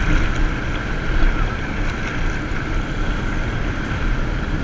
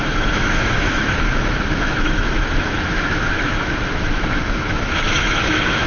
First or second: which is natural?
first